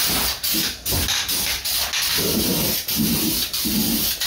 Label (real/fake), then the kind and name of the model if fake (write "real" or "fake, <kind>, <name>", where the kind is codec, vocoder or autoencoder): real